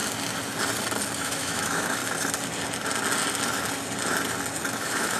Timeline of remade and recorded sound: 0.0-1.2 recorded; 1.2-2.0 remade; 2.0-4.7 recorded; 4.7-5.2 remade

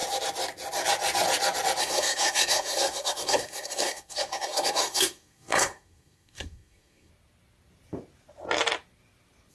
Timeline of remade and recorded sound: 0.0-1.8 recorded; 1.8-7.1 remade; 7.1-9.5 recorded

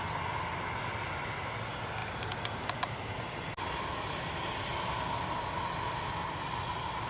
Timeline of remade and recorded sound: 0.0-7.1 recorded

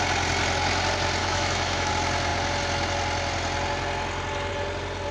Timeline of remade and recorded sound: 0.0-1.2 recorded; 1.2-1.9 remade; 1.9-5.1 recorded

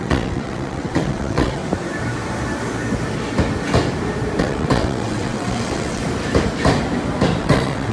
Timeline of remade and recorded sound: 0.0-1.6 remade; 1.6-4.4 recorded; 4.4-6.0 remade; 6.0-7.4 recorded; 7.4-7.9 remade

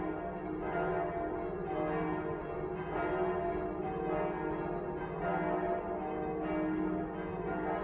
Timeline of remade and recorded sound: 0.0-7.8 recorded